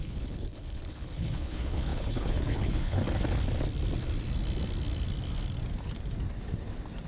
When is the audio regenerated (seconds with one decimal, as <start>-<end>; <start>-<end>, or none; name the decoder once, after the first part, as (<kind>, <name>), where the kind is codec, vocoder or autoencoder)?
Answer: 0.0-3.0 (codec, HILCodec)